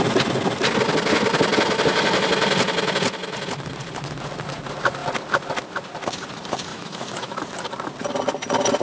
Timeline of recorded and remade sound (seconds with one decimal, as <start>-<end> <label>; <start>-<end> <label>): 0.0-6.7 recorded; 6.7-7.4 remade; 7.4-8.8 recorded